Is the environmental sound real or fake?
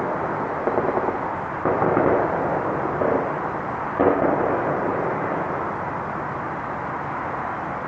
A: real